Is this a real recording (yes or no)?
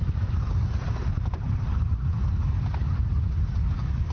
yes